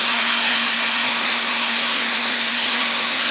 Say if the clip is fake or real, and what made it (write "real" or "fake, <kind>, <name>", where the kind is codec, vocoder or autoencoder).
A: fake, codec, SNAC